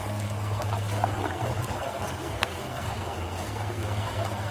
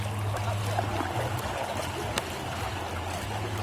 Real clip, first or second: second